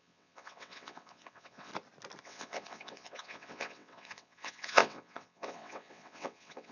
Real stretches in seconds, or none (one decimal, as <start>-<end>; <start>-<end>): 1.7-2.2